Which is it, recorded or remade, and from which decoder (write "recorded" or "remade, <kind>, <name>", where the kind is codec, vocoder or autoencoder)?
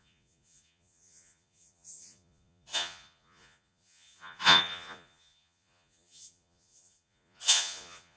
remade, vocoder, Vocos